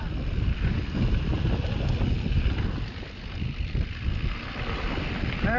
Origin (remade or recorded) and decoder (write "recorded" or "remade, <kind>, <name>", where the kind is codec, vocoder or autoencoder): recorded